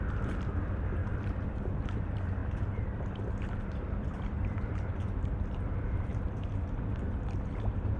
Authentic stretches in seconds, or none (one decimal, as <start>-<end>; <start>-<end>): 6.1-6.8